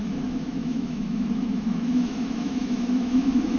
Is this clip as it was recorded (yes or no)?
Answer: no